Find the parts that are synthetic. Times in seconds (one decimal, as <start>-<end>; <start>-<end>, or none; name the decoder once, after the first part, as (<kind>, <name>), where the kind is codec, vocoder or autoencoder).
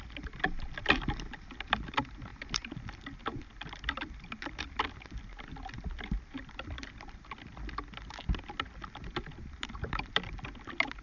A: none